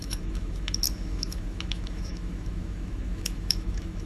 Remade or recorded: remade